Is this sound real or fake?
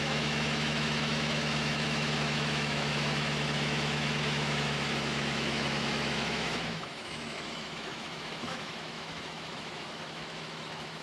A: fake